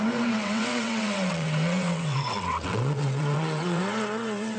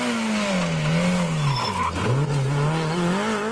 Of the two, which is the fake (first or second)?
first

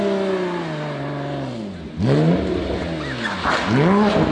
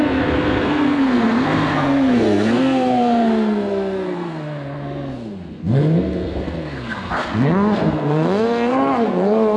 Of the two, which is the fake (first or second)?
second